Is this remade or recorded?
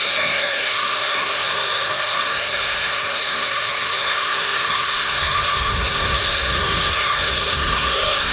remade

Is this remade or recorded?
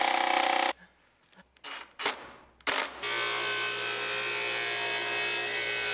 recorded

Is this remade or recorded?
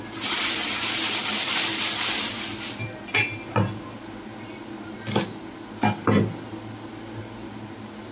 recorded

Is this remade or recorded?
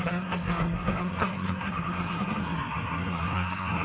remade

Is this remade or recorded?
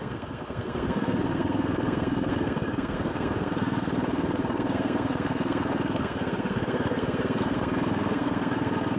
remade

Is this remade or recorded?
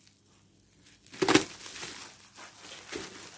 recorded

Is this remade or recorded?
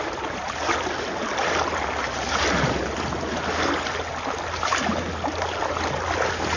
recorded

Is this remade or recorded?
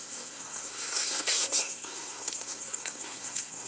remade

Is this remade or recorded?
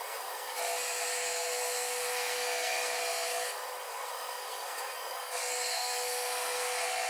remade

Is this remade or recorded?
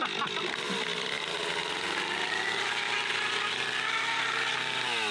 recorded